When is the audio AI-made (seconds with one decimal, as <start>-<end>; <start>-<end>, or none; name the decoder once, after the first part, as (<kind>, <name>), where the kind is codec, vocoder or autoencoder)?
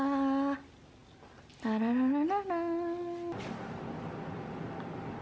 none